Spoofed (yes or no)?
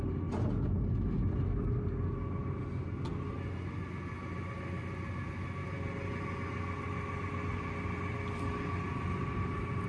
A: no